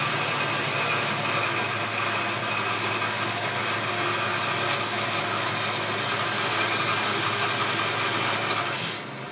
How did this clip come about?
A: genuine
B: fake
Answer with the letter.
A